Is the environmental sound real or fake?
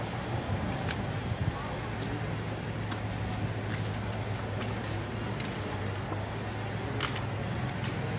real